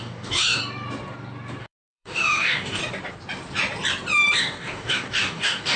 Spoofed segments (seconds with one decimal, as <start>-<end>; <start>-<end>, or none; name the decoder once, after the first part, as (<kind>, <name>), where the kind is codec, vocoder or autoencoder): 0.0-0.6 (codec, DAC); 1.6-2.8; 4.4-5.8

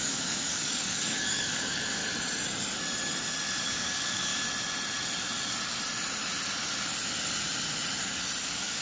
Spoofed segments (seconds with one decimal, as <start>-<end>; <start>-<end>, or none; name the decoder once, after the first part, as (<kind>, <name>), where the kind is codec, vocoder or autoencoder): 0.0-2.0 (codec, DAC); 3.6-4.3; 8.4-8.8

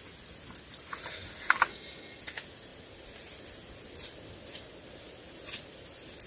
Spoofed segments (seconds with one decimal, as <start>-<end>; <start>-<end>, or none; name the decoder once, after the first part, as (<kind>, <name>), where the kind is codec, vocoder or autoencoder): 1.7-2.2 (codec, DAC)

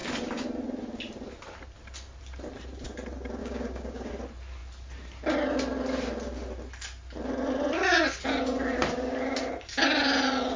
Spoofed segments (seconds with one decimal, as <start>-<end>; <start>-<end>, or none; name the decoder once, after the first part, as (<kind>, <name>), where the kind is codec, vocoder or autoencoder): 3.4-4.1 (codec, DAC)

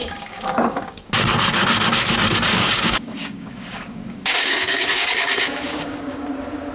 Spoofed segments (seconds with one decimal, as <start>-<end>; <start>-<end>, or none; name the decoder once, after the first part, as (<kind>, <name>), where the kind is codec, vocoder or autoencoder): 0.0-1.1 (codec, DAC); 2.5-6.3